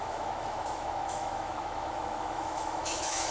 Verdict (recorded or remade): remade